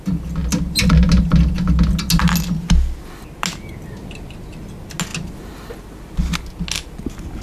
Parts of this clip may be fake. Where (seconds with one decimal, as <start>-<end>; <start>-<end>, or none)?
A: none